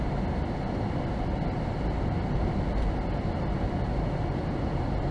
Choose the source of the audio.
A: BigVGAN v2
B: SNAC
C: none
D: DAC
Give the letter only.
C